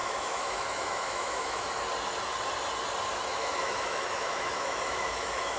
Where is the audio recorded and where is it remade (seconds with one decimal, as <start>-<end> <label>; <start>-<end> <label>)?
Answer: 0.0-1.7 remade; 1.7-3.3 recorded; 3.3-5.6 remade